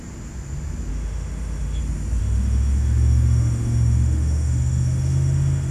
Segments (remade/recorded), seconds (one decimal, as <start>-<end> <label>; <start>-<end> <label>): 0.0-0.9 recorded; 0.9-1.8 remade; 1.8-2.2 recorded; 2.2-5.7 remade